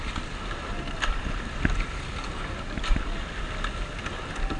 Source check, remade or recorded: recorded